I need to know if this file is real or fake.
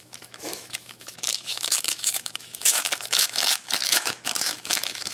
fake